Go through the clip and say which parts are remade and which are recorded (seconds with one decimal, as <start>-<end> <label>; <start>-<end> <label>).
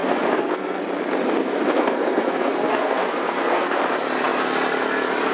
0.0-0.8 remade; 0.8-1.4 recorded; 1.4-3.8 remade; 3.8-5.3 recorded